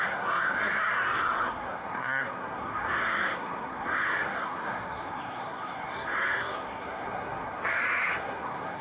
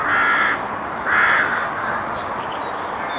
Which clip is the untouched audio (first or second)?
second